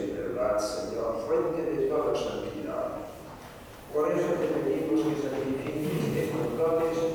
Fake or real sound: real